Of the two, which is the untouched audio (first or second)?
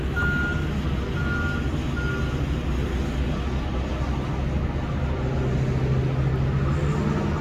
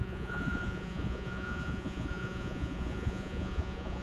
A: first